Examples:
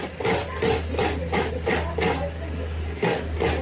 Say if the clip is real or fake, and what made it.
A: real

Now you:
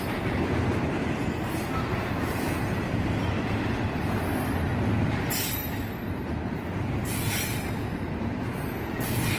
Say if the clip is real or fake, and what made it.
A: real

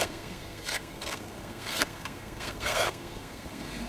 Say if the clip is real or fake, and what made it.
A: fake, codec, SNAC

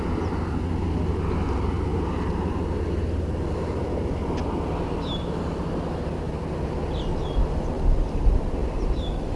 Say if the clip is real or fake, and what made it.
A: real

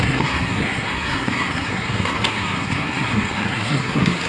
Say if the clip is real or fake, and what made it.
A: fake, codec, SNAC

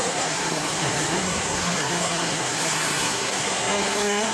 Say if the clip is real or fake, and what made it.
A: fake, codec, SNAC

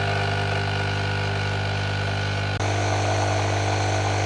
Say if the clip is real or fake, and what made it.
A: real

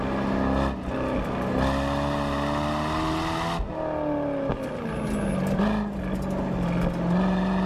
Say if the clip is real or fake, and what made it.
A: real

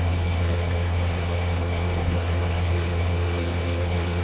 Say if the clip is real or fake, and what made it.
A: fake, codec, SNAC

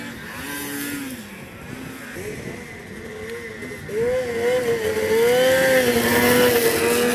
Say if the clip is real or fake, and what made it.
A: real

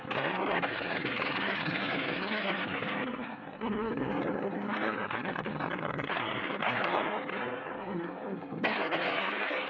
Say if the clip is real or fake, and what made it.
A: fake, codec, SNAC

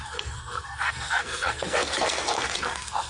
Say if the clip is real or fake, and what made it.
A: fake, codec, SNAC